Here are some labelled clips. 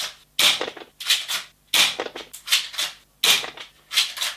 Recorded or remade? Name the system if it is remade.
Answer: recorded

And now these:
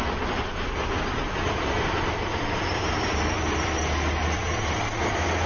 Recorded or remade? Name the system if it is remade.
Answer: recorded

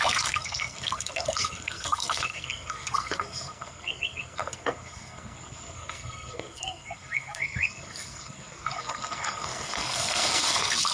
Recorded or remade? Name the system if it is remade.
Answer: remade, codec, SNAC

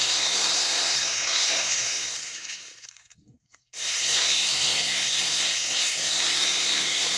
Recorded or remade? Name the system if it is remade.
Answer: remade, codec, SNAC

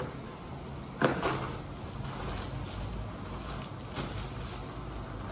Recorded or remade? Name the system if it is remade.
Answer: recorded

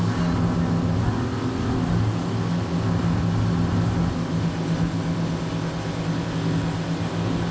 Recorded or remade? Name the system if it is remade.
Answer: recorded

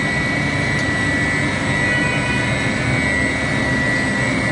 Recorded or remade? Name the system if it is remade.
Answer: recorded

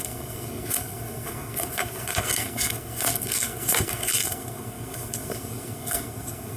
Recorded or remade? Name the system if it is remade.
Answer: remade, codec, SNAC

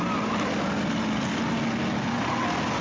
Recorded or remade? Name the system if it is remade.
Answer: recorded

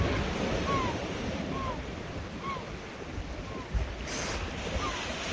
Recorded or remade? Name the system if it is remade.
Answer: recorded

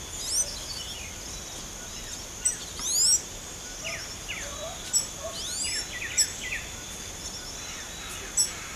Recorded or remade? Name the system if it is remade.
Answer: recorded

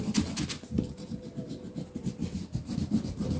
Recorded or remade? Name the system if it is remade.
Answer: recorded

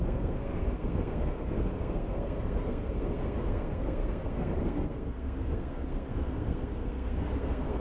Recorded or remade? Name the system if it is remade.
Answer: remade, codec, SNAC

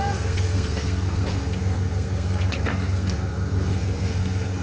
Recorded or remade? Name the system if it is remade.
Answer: remade, codec, SNAC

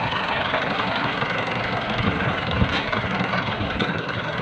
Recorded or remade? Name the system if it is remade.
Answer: remade, codec, SNAC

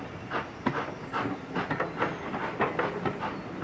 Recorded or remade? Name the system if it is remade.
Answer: recorded